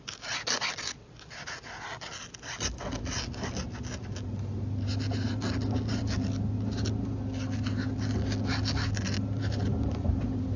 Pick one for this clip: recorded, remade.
recorded